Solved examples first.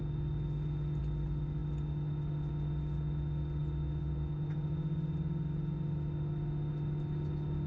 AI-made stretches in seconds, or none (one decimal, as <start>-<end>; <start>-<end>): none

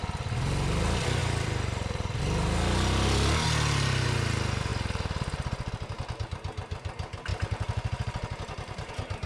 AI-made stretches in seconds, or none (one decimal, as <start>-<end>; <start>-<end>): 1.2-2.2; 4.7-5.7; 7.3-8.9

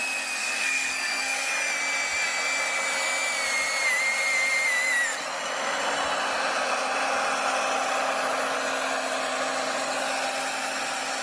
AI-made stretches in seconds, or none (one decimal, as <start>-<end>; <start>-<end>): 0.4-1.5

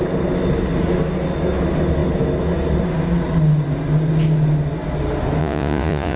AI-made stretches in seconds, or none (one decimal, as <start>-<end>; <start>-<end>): 5.4-6.2

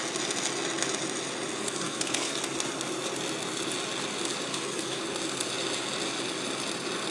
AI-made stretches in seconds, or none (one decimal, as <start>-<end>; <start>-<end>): 1.6-2.4; 4.5-5.0